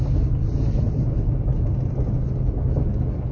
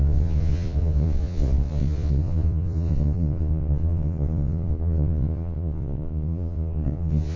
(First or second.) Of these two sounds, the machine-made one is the second